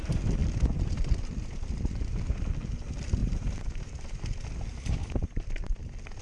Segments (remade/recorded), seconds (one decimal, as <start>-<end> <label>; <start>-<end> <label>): 0.0-3.2 recorded; 3.2-4.2 remade; 4.2-6.2 recorded